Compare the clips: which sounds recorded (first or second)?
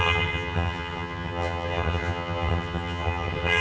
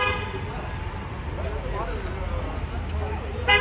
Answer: second